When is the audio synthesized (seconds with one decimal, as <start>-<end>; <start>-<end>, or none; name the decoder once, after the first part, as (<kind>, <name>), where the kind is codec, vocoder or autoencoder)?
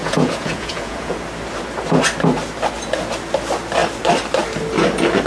0.0-1.2 (vocoder, Vocos)